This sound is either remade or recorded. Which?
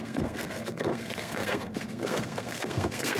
remade